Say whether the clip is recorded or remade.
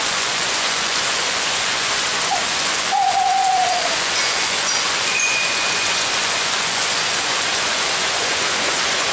remade